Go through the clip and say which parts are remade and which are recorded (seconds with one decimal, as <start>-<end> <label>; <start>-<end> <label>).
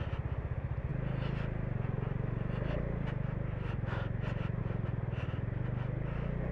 0.0-6.5 recorded